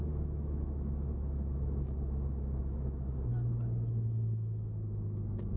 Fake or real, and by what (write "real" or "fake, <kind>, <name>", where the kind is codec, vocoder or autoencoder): fake, autoencoder, DAC-VAE